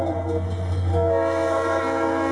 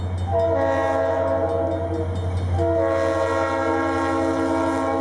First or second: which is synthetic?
first